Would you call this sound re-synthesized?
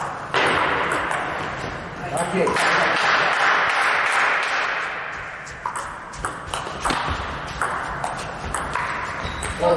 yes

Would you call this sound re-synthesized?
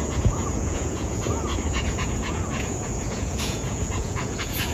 yes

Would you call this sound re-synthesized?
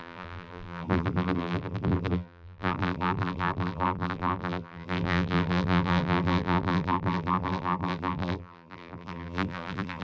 yes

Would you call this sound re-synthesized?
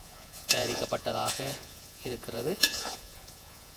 yes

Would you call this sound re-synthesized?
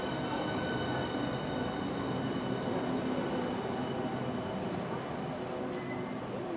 no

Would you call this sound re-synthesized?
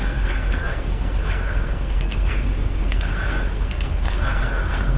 yes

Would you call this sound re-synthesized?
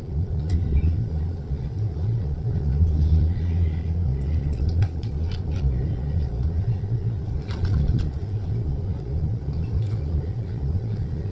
yes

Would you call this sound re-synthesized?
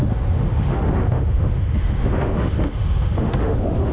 yes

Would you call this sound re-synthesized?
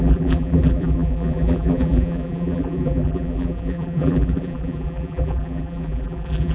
yes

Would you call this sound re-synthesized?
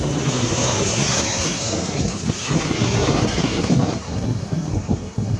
yes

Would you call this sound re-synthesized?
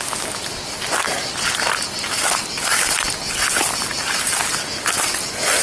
no